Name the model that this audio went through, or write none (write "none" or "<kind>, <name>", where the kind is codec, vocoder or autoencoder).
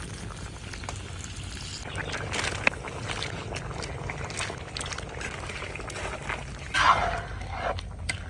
none